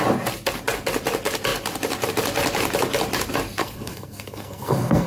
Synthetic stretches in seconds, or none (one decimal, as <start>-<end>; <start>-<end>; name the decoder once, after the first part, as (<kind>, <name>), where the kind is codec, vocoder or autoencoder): 3.6-5.1 (codec, SNAC)